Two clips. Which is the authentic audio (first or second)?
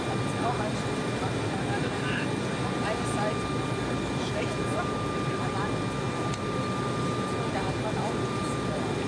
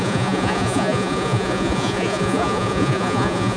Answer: first